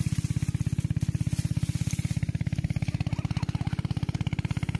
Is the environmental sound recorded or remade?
recorded